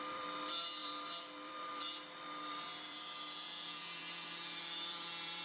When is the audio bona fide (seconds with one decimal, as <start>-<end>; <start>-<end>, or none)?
none